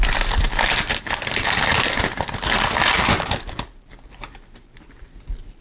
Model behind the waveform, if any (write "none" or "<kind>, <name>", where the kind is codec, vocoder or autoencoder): none